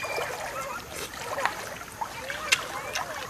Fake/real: real